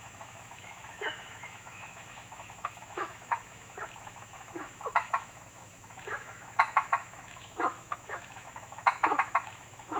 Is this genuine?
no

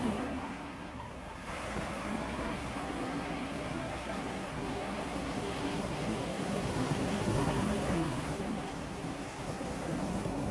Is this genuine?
no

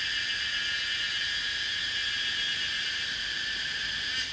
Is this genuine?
yes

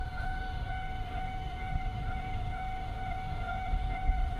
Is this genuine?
no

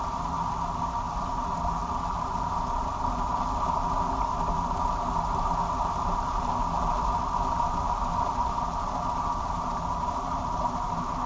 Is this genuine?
yes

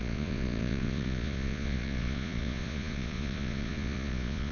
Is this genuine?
no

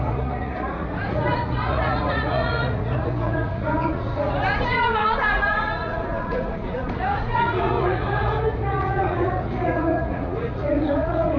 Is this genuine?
no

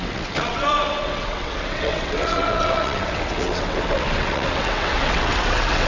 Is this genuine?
no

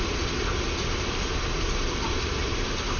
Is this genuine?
yes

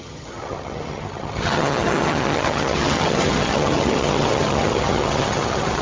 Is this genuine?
no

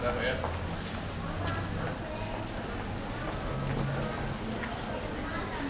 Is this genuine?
yes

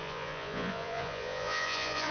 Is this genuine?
no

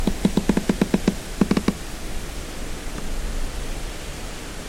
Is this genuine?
yes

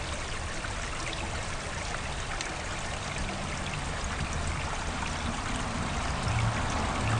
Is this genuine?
yes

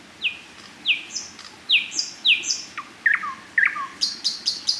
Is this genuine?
yes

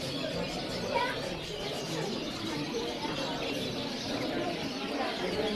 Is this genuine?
no